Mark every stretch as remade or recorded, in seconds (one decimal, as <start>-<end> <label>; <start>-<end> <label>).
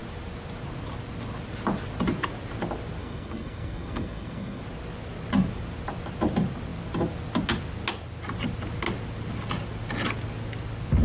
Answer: 0.0-3.0 recorded; 3.0-4.6 remade; 4.6-11.0 recorded